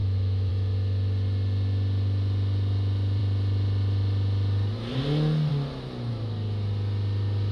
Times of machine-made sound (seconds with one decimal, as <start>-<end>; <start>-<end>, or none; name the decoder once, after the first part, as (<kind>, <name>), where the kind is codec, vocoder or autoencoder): 0.0-0.5 (autoencoder, DAC-VAE)